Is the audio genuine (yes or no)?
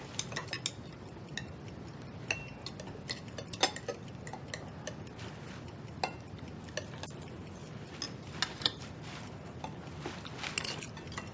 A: yes